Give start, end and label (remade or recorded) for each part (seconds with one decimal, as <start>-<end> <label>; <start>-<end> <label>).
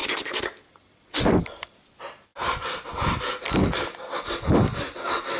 0.0-5.4 recorded